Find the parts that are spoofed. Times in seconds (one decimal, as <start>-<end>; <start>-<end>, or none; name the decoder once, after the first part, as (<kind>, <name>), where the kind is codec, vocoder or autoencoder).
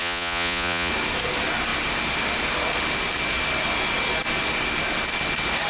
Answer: 0.0-0.9 (vocoder, Vocos)